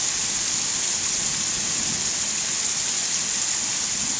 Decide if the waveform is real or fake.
real